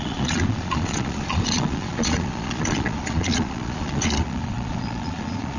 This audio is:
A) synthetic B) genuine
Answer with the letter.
A